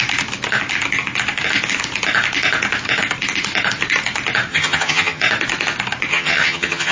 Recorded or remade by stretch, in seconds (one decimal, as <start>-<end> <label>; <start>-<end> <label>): 0.0-4.5 recorded; 4.5-5.2 remade; 5.2-6.1 recorded; 6.1-6.9 remade